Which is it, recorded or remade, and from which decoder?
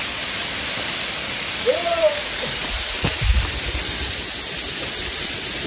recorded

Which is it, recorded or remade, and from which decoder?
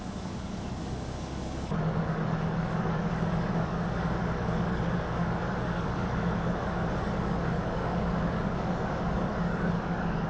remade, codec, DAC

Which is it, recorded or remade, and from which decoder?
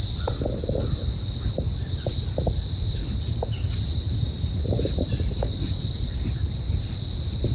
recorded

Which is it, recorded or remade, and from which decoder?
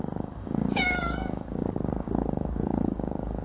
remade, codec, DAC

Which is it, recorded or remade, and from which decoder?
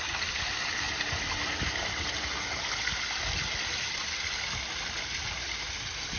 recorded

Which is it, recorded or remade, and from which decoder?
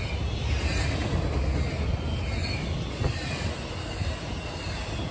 recorded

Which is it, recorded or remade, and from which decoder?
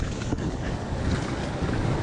remade, codec, DAC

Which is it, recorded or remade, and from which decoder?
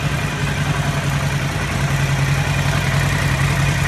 recorded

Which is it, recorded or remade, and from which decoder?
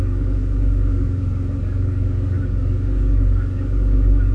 remade, codec, DAC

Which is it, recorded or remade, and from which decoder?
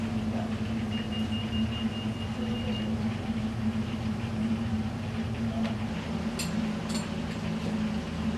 recorded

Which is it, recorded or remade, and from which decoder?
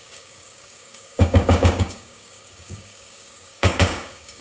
remade, codec, DAC